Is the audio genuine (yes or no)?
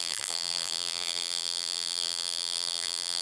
no